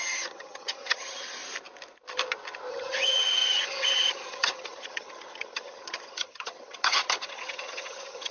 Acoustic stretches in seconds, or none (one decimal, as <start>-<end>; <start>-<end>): 1.4-2.7